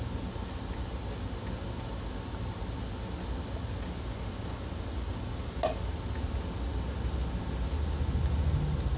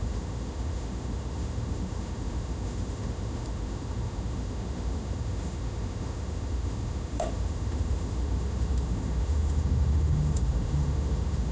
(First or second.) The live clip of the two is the first